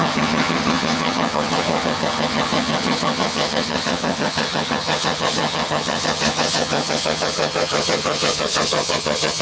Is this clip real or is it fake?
fake